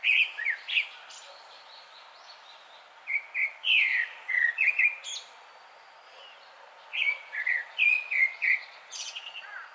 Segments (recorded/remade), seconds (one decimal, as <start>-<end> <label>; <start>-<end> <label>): 0.0-3.9 recorded; 3.9-4.8 remade; 4.8-6.9 recorded; 6.9-9.7 remade